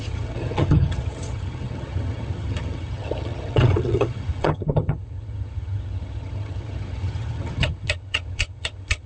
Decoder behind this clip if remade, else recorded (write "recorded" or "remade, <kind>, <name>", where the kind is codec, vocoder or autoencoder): remade, vocoder, HiFi-GAN